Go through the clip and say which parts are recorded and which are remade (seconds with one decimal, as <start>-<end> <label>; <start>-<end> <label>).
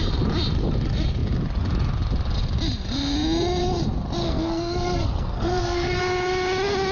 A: 0.0-4.2 recorded; 4.2-6.0 remade; 6.0-6.9 recorded